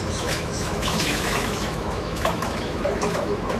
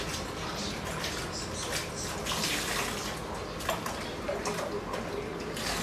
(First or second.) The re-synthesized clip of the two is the first